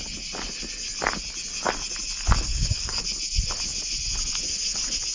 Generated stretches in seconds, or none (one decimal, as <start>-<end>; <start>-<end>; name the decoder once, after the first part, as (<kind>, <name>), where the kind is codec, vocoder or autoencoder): 2.5-3.0 (codec, DAC)